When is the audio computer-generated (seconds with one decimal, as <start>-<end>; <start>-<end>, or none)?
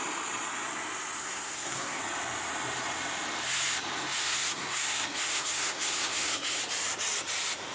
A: 1.2-2.0; 4.2-6.6